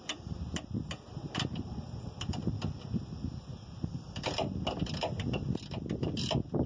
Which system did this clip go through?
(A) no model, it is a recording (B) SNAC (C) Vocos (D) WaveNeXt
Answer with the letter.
A